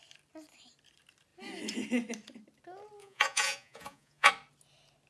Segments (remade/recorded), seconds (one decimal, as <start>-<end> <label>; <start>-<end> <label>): 0.0-3.0 recorded; 3.0-4.3 remade; 4.3-5.1 recorded